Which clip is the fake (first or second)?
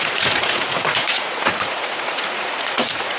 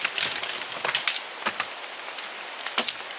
first